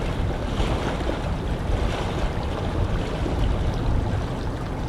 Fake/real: real